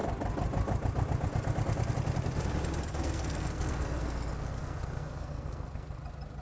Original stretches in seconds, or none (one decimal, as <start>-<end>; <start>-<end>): 0.0-2.9; 6.0-6.4